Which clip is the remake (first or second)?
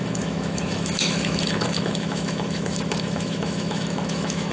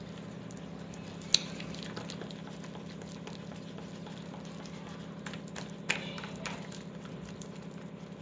first